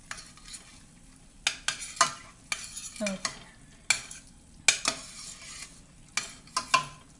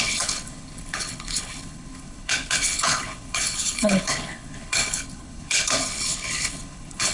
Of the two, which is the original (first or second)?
first